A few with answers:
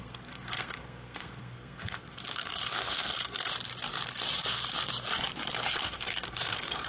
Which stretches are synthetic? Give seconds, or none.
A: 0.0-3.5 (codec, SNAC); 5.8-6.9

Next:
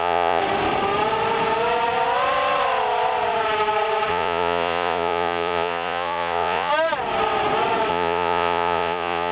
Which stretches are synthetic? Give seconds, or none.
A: 0.0-0.4 (vocoder, Vocos); 4.1-6.7; 7.9-9.3

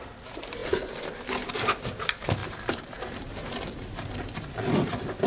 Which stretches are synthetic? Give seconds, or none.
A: none

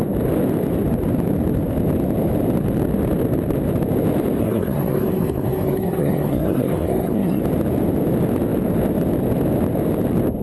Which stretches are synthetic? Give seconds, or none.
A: 4.4-7.4 (codec, SNAC)

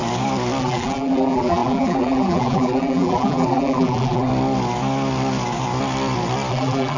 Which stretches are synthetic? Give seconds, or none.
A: 0.6-4.3 (vocoder, BigVGAN v2); 6.5-7.0